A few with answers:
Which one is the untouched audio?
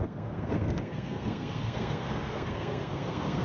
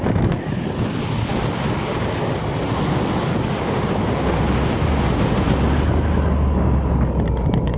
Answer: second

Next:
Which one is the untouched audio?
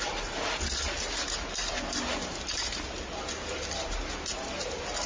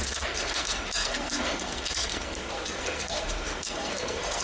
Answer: first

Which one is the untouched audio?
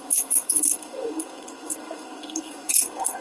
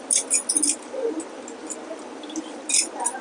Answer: second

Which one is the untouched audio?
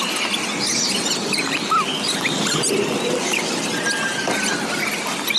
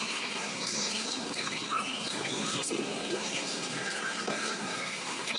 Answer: first